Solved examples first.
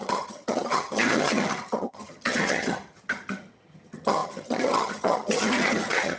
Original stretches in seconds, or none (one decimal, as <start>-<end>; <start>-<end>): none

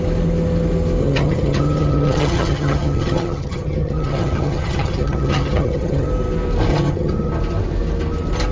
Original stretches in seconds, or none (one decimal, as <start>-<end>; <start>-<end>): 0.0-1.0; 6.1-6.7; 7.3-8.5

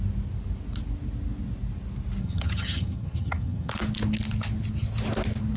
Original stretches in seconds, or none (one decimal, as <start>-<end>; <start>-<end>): 0.0-2.2; 3.7-5.6

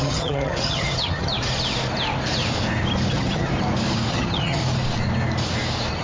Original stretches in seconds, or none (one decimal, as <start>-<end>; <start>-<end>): 1.3-3.1; 3.5-4.1; 4.6-6.0

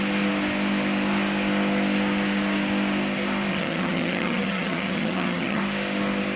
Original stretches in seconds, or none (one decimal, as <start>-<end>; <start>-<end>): 0.0-3.5; 5.6-6.4

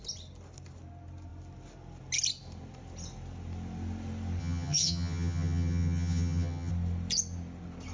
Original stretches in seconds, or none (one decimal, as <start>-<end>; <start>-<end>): 0.0-4.4; 6.7-7.9

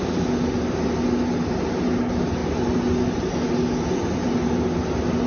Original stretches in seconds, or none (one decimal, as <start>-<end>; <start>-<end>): 0.0-5.3